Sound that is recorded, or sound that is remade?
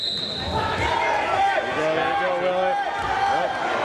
recorded